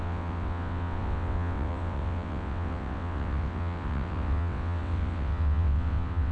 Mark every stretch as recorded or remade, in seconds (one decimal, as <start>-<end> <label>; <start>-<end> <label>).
0.0-6.3 remade